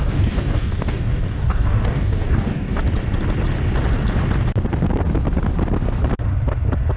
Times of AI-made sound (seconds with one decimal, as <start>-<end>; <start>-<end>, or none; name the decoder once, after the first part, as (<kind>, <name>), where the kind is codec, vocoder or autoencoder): 0.0-2.8 (codec, DAC)